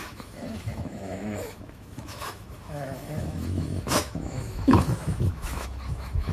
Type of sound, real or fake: fake